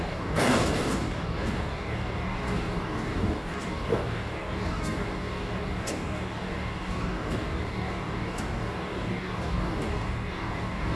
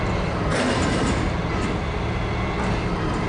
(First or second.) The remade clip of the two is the first